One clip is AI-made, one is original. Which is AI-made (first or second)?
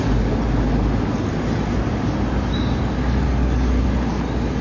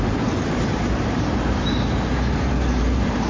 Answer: second